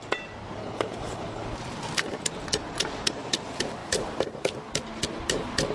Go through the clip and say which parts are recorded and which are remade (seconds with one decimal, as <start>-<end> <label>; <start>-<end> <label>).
0.0-0.6 recorded; 0.6-1.4 remade; 1.4-5.7 recorded